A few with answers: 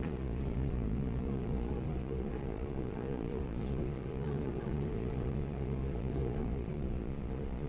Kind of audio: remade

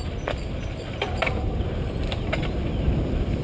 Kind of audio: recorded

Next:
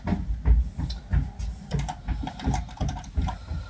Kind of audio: recorded